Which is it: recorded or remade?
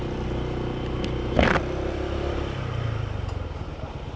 recorded